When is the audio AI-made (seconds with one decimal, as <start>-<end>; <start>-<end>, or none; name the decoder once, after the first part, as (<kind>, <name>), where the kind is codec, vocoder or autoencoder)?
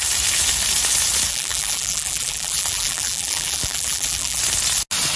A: 1.3-4.4 (vocoder, BigVGAN v2)